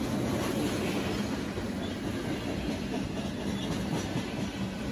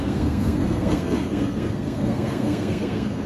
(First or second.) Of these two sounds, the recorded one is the first